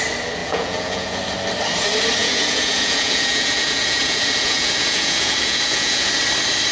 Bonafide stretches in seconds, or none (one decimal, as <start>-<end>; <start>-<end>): 0.0-0.4; 1.2-2.2; 6.2-6.7